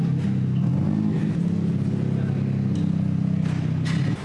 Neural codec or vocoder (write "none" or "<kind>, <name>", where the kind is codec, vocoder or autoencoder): none